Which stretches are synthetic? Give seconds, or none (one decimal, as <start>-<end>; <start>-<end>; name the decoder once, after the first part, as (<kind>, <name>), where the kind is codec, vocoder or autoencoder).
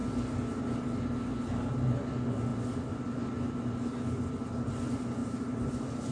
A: 0.0-0.6 (vocoder, BigVGAN v2); 5.2-6.1